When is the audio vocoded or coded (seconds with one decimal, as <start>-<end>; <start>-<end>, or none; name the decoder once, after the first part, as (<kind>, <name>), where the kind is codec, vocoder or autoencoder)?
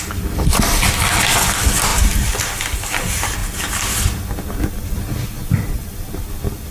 none